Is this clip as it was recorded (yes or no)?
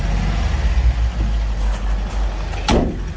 yes